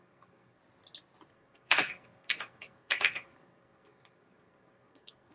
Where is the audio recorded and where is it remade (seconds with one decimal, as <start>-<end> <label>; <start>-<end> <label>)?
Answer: 0.0-0.6 remade; 0.6-1.3 recorded; 1.3-5.3 remade